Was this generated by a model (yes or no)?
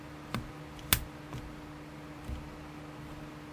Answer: no